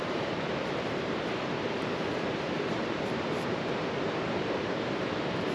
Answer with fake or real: fake